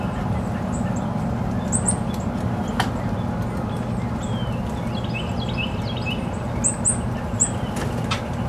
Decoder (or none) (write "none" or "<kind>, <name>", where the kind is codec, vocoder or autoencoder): none